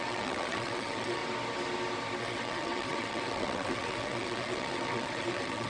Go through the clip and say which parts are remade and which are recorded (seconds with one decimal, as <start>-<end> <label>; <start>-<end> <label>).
0.0-1.2 remade; 1.2-2.2 recorded; 2.2-5.7 remade